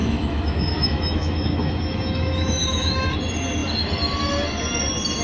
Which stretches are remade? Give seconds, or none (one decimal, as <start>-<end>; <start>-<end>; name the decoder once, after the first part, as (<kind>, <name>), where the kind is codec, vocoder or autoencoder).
0.0-3.1 (autoencoder, DAC-VAE)